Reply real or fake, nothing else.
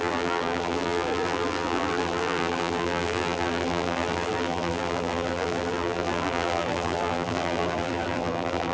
fake